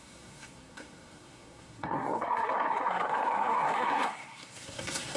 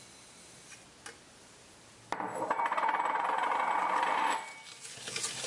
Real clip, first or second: second